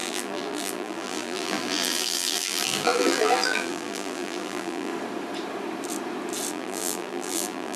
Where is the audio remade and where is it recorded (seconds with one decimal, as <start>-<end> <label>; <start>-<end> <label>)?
0.0-4.9 remade; 4.9-6.5 recorded; 6.5-7.8 remade